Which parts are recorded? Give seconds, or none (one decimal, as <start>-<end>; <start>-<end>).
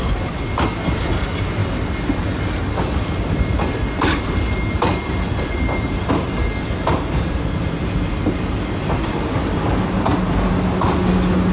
0.0-11.5